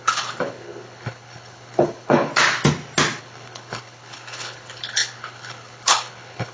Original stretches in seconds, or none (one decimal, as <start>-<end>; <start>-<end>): 2.3-3.2